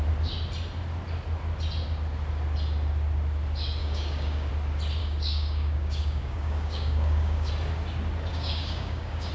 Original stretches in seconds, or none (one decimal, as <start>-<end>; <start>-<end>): 0.0-3.8; 4.5-5.0; 7.5-8.3